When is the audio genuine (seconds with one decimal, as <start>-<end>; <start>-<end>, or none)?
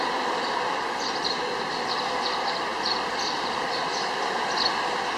0.0-5.2